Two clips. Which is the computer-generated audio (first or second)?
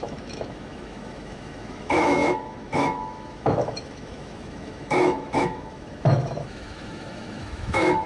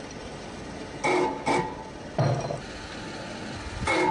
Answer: first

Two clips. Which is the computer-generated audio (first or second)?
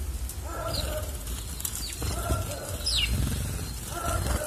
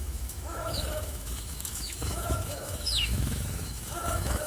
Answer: second